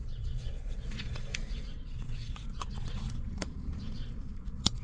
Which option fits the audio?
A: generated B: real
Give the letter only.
A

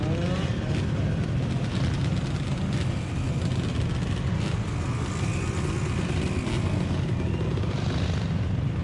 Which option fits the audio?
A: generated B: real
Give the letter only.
B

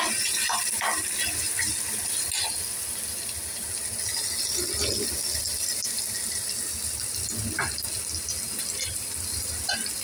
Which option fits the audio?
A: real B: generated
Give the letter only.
A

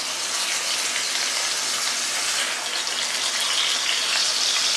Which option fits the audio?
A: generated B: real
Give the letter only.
B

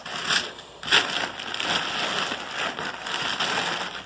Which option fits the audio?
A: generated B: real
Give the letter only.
B